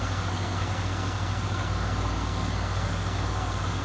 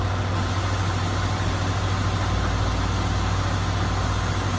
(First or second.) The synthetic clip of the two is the first